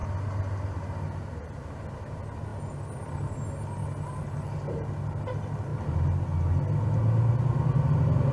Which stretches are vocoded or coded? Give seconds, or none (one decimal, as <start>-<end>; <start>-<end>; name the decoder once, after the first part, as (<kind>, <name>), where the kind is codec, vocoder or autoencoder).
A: none